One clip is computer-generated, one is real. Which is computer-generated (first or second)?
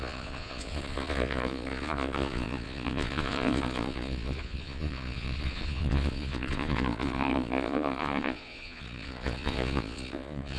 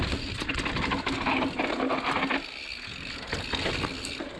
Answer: first